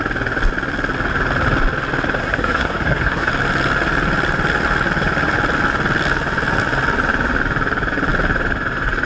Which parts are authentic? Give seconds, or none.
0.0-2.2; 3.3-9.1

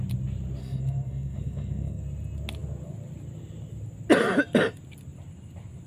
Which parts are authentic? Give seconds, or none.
0.0-0.6; 2.0-5.9